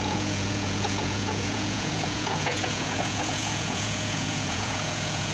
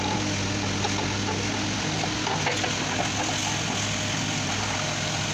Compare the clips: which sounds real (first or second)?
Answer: second